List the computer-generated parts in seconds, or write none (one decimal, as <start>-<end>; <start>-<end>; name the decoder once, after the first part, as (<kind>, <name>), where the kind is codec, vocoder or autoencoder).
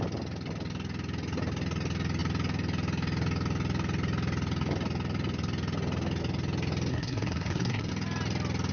6.9-7.9 (codec, SNAC)